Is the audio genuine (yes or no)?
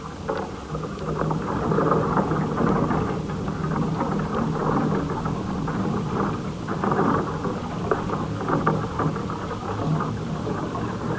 yes